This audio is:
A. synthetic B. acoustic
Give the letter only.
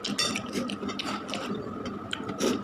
B